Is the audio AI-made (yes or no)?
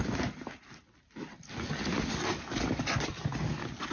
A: no